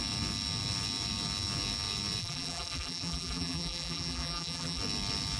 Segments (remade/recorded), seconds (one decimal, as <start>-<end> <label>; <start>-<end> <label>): 0.0-2.2 recorded; 2.2-4.8 remade; 4.8-5.4 recorded